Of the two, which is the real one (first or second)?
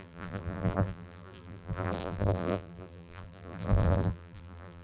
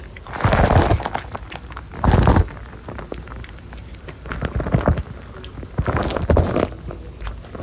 second